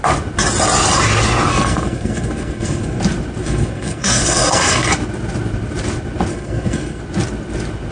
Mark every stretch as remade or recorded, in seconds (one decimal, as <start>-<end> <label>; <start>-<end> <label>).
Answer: 0.0-1.5 recorded; 1.5-3.0 remade; 3.0-3.4 recorded; 3.4-4.9 remade; 4.9-6.3 recorded; 6.3-7.0 remade; 7.0-7.9 recorded